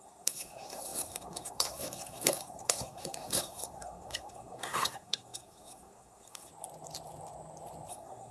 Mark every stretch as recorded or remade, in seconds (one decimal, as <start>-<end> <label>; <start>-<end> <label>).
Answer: 0.0-6.5 remade; 6.5-7.9 recorded; 7.9-8.3 remade